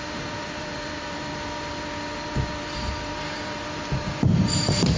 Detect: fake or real fake